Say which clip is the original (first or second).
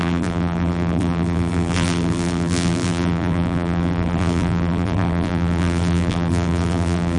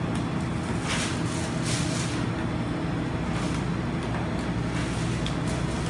second